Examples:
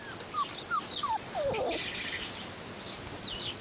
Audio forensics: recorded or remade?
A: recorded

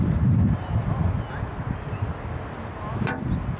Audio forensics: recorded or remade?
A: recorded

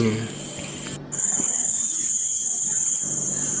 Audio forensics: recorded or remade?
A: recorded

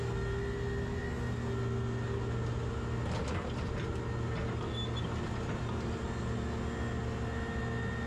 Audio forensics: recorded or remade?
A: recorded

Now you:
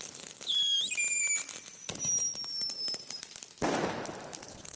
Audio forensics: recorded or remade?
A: recorded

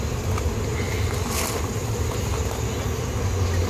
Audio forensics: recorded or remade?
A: recorded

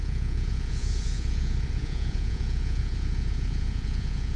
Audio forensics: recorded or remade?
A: remade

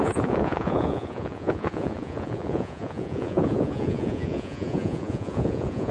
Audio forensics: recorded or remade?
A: remade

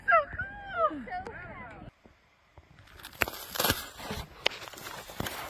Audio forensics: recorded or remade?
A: recorded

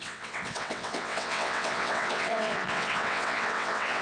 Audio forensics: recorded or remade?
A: remade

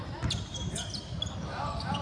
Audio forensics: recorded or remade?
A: recorded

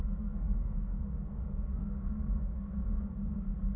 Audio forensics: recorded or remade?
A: remade